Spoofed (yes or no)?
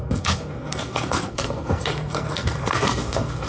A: yes